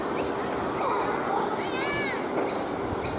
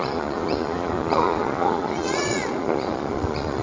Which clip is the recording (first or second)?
first